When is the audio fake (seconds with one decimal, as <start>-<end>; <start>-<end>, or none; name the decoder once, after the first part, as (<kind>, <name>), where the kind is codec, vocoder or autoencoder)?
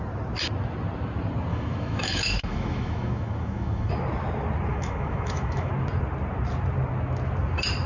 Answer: 1.5-3.9 (autoencoder, DAC-VAE); 4.7-5.7